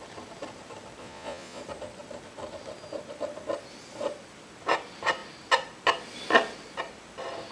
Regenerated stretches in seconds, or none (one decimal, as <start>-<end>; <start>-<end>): 1.0-1.6